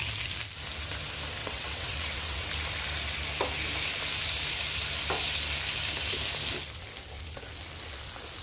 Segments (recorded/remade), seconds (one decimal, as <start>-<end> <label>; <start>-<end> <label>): 0.0-1.4 recorded; 1.4-2.5 remade; 2.5-8.4 recorded